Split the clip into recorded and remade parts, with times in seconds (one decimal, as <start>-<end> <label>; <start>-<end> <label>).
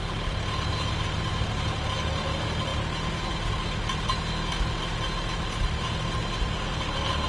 0.0-7.3 recorded